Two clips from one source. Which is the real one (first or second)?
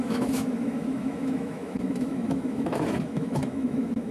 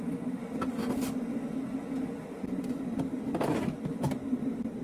second